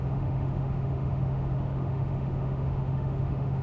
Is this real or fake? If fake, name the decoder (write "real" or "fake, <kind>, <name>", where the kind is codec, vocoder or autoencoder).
fake, autoencoder, DAC-VAE